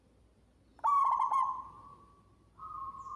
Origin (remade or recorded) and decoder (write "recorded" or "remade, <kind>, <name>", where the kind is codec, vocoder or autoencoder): recorded